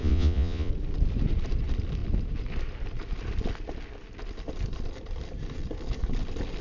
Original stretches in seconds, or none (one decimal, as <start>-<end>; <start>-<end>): 0.7-6.6